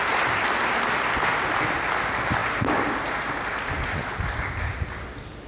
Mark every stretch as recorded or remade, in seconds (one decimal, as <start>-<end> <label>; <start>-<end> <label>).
0.0-5.5 recorded